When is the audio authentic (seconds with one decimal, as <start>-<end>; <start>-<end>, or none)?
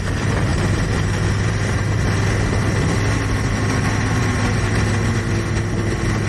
0.0-6.3